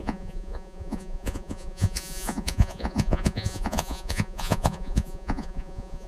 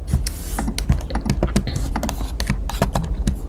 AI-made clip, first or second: first